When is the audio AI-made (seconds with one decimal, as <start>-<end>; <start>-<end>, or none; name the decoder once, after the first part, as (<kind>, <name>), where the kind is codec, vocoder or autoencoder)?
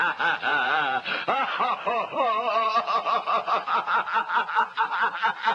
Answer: 0.5-3.5 (vocoder, BigVGAN v2)